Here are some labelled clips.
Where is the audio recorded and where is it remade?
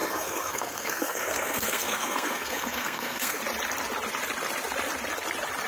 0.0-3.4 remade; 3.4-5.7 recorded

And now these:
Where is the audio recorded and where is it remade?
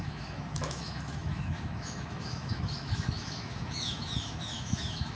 0.0-5.2 remade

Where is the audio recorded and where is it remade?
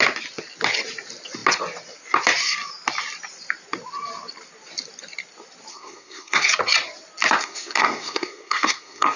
0.0-5.7 recorded; 5.7-6.4 remade; 6.4-7.4 recorded; 7.4-9.2 remade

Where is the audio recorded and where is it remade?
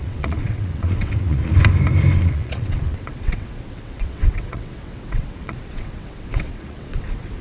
0.0-1.5 remade; 1.5-2.2 recorded; 2.2-7.4 remade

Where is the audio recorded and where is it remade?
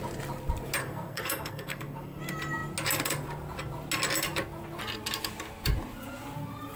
0.0-0.8 recorded; 0.8-2.2 remade; 2.2-6.8 recorded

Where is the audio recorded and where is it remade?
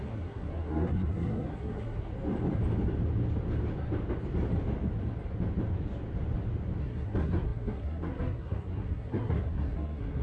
0.0-2.1 remade; 2.1-6.8 recorded; 6.8-10.2 remade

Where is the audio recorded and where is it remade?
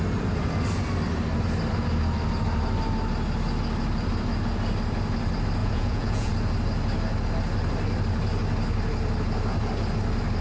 0.0-5.6 recorded; 5.6-6.3 remade; 6.3-10.4 recorded